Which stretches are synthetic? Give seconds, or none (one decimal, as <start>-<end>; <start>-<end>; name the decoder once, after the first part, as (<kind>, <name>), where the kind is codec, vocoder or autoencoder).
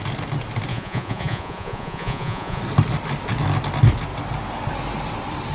0.7-2.6 (vocoder, Vocos)